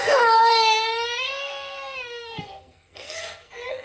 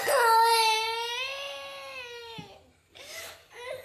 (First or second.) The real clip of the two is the second